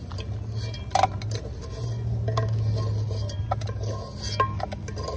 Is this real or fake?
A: real